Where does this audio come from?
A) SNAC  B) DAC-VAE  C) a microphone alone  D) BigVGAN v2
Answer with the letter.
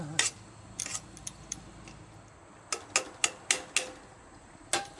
C